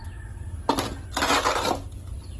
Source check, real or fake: real